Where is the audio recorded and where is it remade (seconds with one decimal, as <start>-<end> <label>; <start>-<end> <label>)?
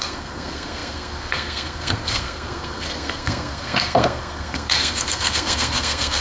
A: 0.0-6.2 remade